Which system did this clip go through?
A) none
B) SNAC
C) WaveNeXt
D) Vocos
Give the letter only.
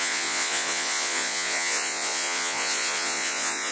D